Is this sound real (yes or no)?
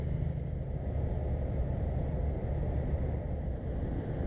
yes